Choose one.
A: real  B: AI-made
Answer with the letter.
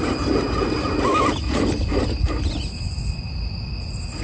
A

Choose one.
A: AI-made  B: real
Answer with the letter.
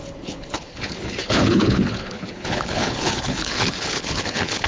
A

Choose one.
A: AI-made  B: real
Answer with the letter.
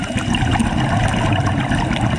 B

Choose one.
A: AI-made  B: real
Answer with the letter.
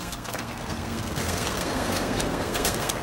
A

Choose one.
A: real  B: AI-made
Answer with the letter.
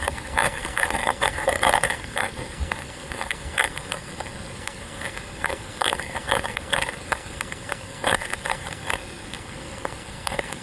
B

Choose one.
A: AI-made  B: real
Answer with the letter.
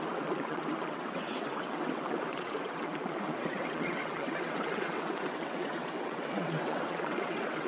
A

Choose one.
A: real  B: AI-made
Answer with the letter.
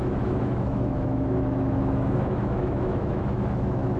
B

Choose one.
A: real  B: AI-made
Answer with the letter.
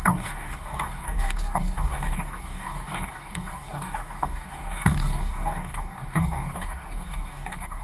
B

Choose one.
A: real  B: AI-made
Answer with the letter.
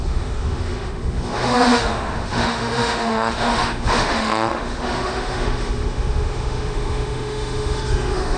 B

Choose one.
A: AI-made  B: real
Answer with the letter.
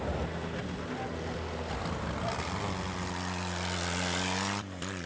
B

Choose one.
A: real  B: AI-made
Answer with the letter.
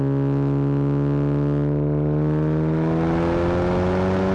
A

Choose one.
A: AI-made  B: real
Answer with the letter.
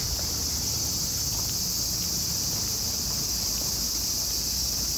B